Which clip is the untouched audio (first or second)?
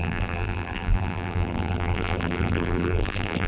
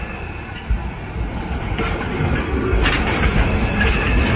second